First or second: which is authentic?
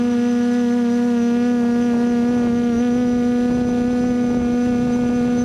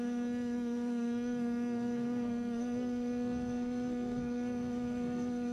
first